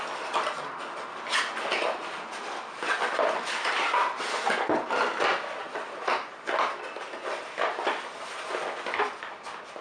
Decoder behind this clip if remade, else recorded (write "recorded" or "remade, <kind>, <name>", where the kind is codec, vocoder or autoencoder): recorded